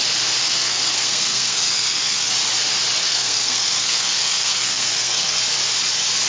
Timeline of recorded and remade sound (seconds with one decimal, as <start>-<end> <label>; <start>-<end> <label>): 0.0-0.4 recorded; 0.4-2.3 remade; 2.3-3.0 recorded; 3.0-5.4 remade; 5.4-6.3 recorded